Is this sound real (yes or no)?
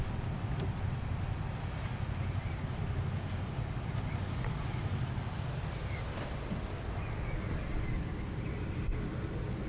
yes